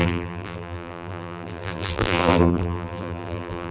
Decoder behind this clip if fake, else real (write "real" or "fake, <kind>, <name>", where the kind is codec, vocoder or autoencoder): fake, vocoder, BigVGAN v2